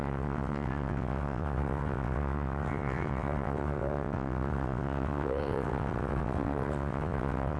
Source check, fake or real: fake